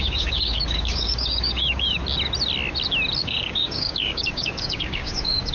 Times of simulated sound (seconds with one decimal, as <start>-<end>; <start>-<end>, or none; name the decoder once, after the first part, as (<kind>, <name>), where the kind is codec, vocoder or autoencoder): 0.0-2.0 (codec, DAC); 3.2-5.5